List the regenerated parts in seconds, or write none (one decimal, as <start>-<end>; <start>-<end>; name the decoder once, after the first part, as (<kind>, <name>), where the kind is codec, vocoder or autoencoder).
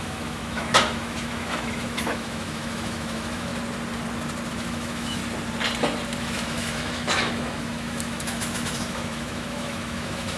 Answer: 0.0-3.5 (autoencoder, DAC-VAE); 4.5-5.2; 6.2-10.4